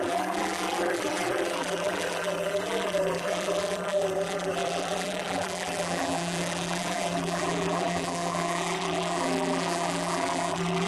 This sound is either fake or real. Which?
fake